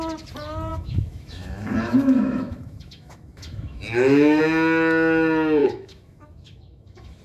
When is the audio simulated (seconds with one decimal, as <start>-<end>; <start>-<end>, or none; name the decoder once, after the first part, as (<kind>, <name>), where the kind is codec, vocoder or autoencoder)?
0.7-4.4 (autoencoder, DAC-VAE); 5.6-7.2